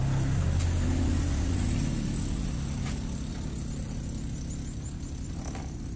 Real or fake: real